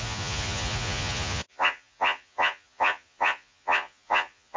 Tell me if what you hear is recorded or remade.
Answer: remade